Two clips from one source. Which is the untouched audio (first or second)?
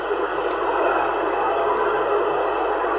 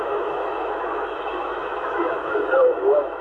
first